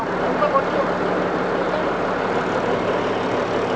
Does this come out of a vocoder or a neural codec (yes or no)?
no